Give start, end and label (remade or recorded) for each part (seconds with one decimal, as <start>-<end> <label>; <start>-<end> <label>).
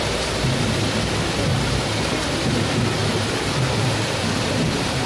0.0-1.5 recorded; 1.5-2.3 remade; 2.3-3.0 recorded; 3.0-5.1 remade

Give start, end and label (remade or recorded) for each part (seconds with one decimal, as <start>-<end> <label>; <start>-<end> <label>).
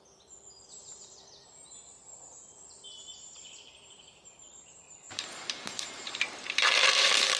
0.0-3.0 recorded; 3.0-7.4 remade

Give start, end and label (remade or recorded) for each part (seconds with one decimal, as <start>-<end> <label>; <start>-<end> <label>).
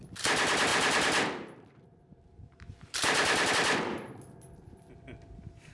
0.0-0.7 recorded; 0.7-3.5 remade; 3.5-5.7 recorded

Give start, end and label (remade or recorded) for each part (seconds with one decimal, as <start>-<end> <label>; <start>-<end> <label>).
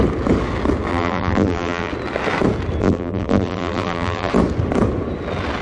0.0-0.9 recorded; 0.9-1.9 remade; 1.9-2.8 recorded; 2.8-4.3 remade; 4.3-5.6 recorded